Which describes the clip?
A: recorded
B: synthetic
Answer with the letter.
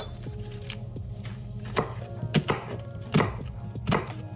B